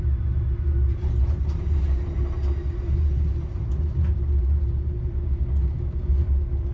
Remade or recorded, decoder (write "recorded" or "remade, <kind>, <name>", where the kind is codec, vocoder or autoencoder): remade, vocoder, BigVGAN v2